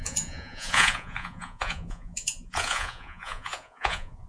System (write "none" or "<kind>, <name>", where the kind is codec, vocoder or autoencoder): vocoder, Vocos